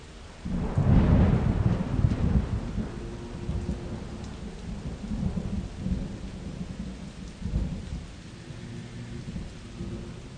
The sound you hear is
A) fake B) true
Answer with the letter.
B